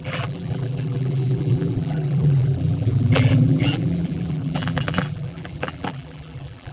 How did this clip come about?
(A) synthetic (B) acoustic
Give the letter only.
A